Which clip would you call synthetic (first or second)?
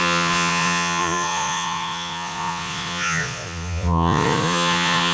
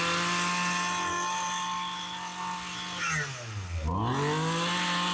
first